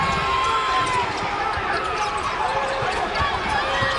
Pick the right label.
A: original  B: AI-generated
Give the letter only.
A